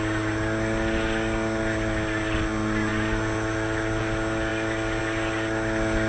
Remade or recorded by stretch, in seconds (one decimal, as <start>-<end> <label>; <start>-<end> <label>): 0.0-6.1 recorded

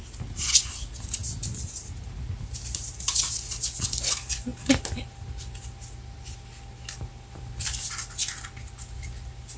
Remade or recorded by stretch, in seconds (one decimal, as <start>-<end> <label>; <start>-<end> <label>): 0.0-9.6 recorded

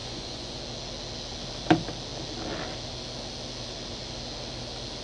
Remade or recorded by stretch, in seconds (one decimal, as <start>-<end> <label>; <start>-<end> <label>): 0.0-0.6 remade; 0.6-5.0 recorded

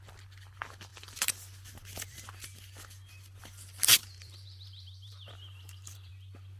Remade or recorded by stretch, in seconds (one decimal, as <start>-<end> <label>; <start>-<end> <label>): 0.0-4.0 recorded; 4.0-6.1 remade; 6.1-6.6 recorded

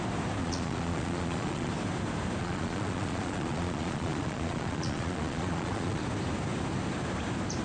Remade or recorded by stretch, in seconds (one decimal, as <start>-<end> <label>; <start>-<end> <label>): 0.0-0.4 recorded; 0.4-1.7 remade; 1.7-2.4 recorded; 2.4-6.0 remade; 6.0-7.6 recorded

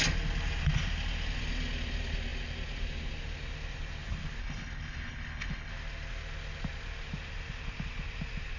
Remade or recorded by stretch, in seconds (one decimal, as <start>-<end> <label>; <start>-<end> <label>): 0.0-4.4 recorded; 4.4-5.7 remade; 5.7-8.6 recorded